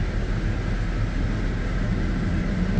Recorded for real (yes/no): yes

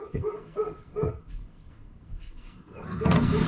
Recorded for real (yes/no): no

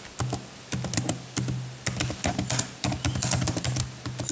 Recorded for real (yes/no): yes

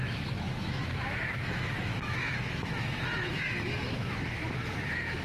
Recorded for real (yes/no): no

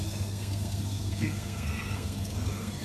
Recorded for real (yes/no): no